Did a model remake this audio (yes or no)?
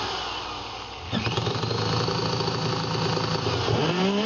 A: no